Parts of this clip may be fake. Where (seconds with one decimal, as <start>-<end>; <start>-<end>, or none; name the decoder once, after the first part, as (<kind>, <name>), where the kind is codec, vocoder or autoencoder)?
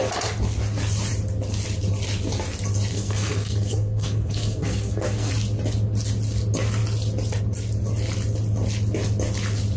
2.9-5.3 (codec, SNAC)